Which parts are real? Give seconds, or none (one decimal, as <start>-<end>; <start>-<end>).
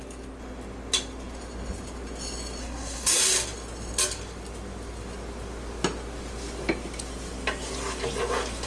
0.0-2.6; 3.2-8.7